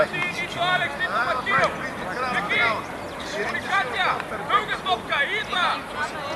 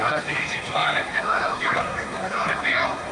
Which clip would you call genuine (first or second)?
first